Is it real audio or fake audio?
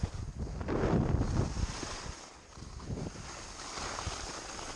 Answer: real